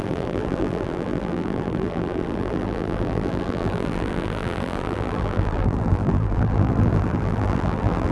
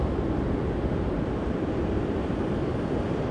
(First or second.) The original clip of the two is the second